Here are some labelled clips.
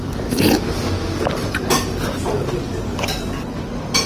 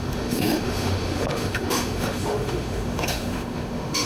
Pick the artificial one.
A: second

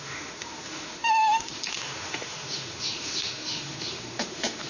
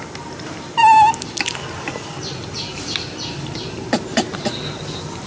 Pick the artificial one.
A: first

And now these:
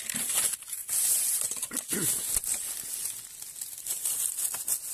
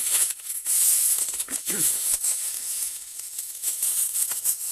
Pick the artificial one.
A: second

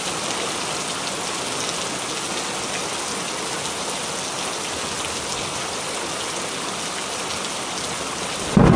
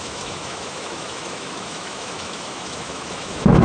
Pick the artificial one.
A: second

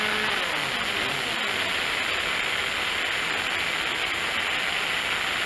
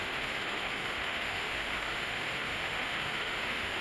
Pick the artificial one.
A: second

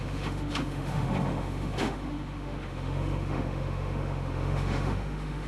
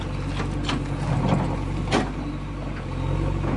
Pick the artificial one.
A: first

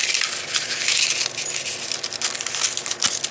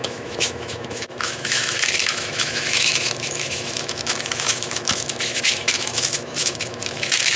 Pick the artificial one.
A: second